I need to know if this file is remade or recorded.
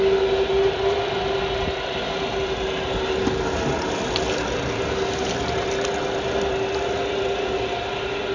recorded